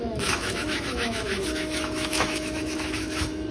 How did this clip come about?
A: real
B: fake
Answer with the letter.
B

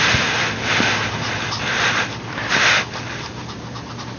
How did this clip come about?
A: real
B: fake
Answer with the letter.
A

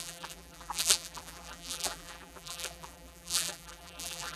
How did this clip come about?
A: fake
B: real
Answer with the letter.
A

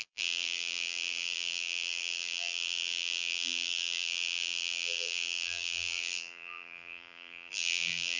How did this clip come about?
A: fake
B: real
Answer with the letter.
A